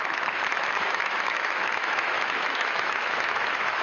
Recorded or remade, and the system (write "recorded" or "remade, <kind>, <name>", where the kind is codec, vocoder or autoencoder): remade, autoencoder, DAC-VAE